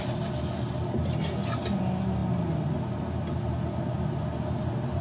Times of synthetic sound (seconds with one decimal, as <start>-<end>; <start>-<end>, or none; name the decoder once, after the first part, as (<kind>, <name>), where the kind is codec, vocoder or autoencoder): none